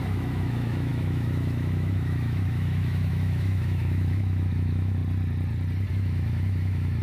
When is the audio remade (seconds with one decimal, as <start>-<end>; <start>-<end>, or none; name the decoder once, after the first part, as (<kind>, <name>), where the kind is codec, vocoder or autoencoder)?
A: 0.0-5.0 (autoencoder, DAC-VAE); 5.9-7.0